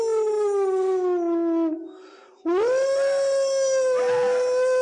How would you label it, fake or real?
real